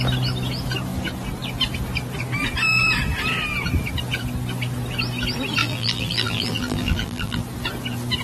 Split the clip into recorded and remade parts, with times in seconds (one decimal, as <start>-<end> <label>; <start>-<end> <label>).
0.0-5.6 recorded; 5.6-7.4 remade; 7.4-8.2 recorded